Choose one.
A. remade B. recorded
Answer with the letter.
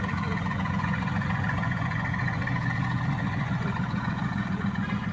A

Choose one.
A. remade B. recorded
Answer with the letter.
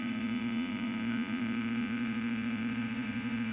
A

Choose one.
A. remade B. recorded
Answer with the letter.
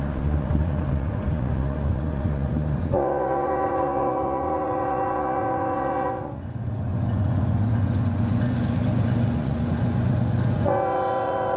A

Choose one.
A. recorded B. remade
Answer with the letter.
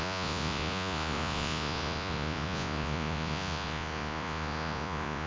B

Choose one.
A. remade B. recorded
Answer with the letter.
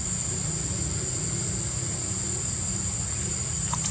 B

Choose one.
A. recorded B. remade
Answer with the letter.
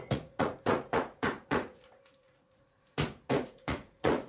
B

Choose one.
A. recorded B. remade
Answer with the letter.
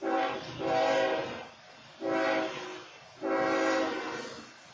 A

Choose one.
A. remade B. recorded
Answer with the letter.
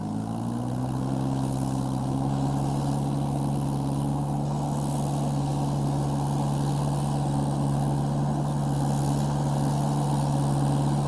B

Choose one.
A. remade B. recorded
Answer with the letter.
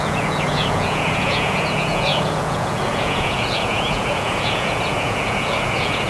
A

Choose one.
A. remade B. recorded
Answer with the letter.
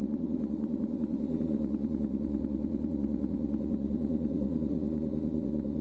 A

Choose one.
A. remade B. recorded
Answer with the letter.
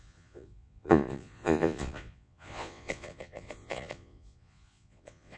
A